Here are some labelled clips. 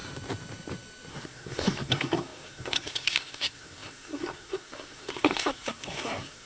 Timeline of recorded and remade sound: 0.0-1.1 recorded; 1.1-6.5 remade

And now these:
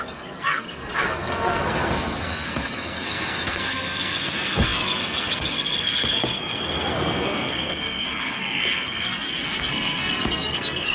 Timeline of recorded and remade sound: 0.0-10.9 remade

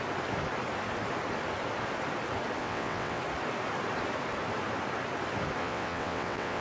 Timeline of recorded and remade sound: 0.0-2.6 recorded; 2.6-3.2 remade; 3.2-5.6 recorded; 5.6-6.6 remade

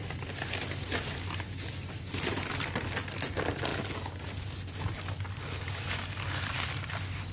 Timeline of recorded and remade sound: 0.0-3.7 remade; 3.7-6.5 recorded; 6.5-7.3 remade

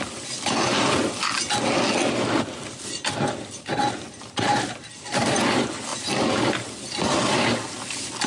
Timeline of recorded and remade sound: 0.0-8.3 recorded

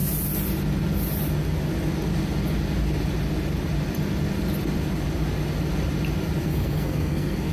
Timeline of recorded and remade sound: 0.0-6.4 recorded; 6.4-7.5 remade